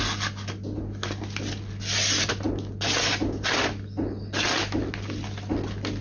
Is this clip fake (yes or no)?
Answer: no